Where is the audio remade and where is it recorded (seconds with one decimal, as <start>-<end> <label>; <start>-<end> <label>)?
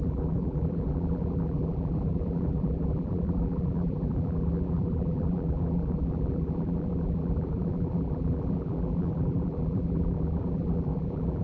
0.0-11.4 remade